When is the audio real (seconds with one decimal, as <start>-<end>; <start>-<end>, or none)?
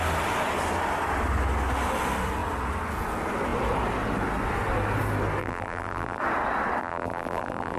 0.0-5.4; 6.2-6.8